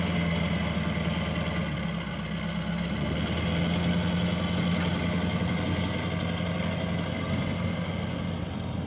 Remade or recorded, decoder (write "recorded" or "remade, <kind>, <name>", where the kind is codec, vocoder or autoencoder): recorded